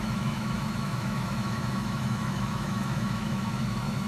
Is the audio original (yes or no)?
no